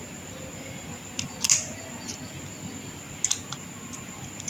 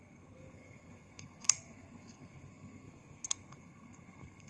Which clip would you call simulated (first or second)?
second